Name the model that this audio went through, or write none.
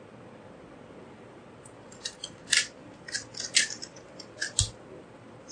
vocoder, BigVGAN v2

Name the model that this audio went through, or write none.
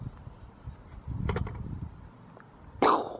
vocoder, BigVGAN v2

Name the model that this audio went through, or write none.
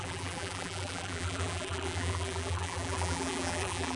vocoder, BigVGAN v2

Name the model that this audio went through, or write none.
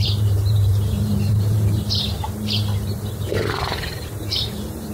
vocoder, BigVGAN v2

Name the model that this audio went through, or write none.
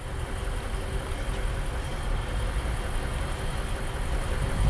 none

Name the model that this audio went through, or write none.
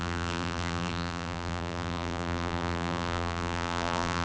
vocoder, BigVGAN v2